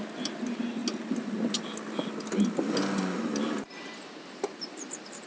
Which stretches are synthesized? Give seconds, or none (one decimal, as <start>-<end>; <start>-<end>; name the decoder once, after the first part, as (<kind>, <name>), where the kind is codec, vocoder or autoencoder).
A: none